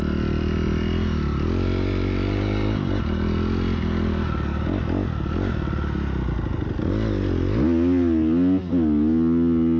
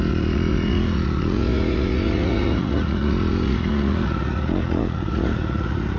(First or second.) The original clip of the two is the first